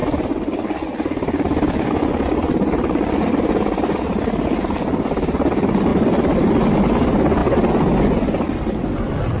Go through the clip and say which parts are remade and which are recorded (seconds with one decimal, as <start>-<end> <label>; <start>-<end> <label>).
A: 0.0-9.4 recorded